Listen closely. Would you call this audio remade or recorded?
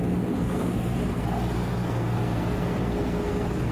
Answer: remade